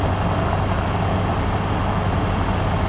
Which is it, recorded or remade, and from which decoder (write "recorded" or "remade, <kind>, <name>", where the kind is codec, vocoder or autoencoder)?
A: recorded